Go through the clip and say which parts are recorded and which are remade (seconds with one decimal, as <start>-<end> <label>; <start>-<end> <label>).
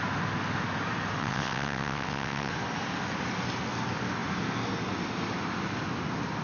0.0-1.2 recorded; 1.2-2.5 remade; 2.5-6.4 recorded